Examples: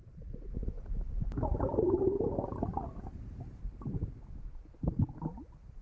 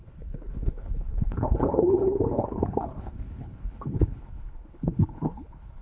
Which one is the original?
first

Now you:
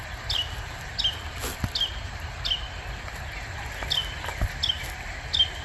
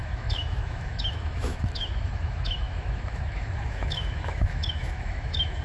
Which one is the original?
first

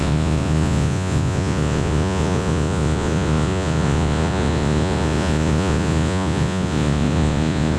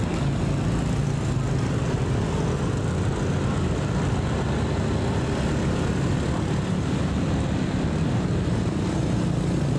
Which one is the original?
second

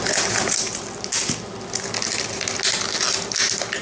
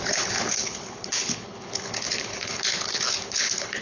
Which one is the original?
first